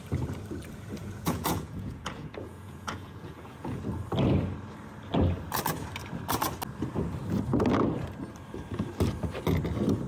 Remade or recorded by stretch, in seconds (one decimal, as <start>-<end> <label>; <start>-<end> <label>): 0.0-1.0 recorded; 1.0-3.8 remade; 3.8-10.1 recorded